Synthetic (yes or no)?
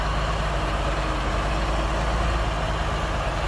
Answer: no